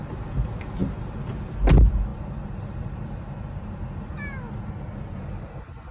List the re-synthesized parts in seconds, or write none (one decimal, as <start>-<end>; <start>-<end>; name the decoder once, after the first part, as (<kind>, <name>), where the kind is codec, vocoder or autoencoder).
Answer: none